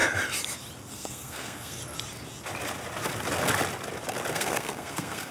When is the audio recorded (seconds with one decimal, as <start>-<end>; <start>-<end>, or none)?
0.0-0.9; 1.8-4.3